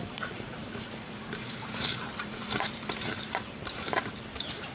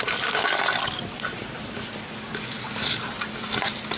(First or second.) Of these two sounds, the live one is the second